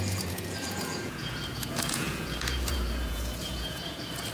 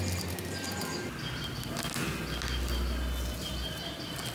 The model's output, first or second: first